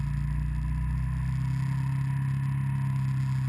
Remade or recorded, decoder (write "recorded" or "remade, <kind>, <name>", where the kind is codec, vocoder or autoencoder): recorded